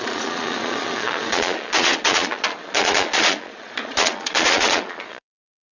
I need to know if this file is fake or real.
fake